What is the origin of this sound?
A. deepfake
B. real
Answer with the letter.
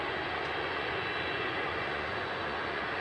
A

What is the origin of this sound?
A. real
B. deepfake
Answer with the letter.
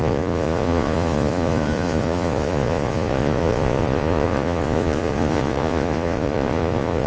B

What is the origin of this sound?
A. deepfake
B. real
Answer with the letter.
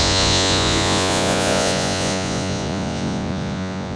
A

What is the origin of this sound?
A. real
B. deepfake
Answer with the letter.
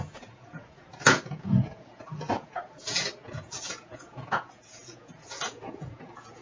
B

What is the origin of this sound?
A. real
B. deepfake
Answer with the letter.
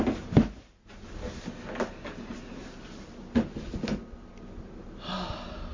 A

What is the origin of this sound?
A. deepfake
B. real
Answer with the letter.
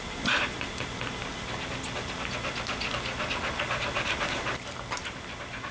B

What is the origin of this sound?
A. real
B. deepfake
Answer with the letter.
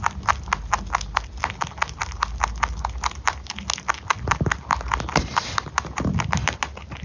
A